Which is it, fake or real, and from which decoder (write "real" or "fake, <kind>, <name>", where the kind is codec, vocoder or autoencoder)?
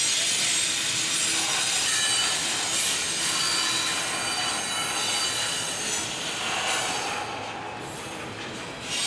real